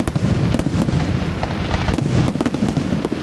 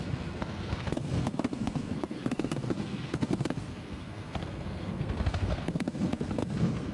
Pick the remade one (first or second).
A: second